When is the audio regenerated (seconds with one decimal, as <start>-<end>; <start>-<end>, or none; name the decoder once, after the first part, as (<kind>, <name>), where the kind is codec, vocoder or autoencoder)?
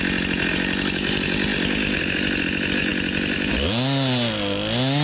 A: none